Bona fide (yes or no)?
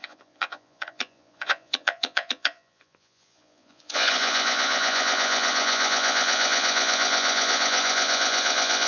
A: no